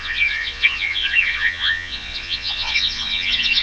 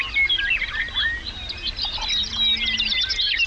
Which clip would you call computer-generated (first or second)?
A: first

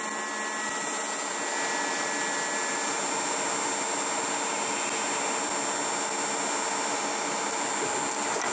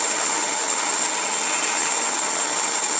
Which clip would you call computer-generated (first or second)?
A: second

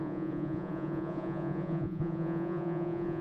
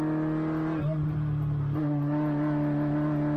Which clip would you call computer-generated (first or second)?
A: first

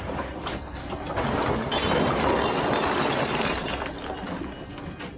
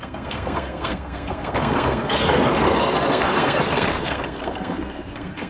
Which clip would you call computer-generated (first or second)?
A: second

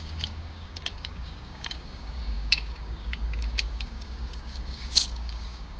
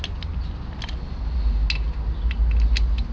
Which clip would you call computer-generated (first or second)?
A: first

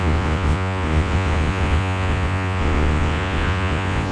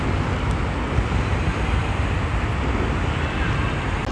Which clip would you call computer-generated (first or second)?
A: first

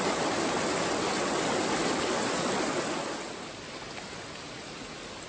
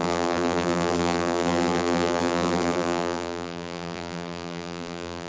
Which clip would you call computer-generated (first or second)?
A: second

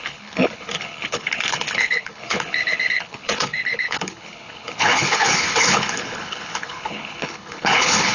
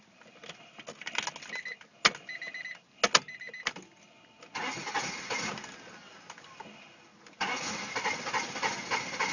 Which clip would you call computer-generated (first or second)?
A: first